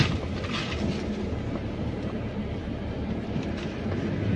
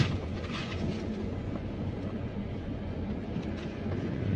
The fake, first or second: second